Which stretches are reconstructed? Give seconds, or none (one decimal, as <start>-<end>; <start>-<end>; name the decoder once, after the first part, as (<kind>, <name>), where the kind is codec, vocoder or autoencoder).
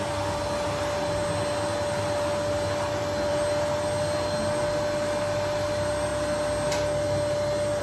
none